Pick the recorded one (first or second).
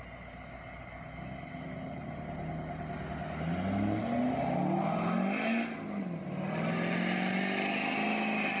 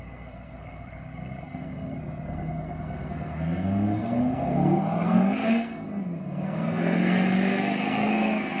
first